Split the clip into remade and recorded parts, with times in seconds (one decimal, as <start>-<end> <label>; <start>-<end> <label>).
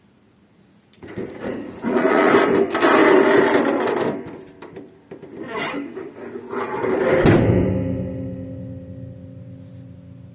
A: 0.0-0.4 recorded; 0.4-2.3 remade; 2.3-10.3 recorded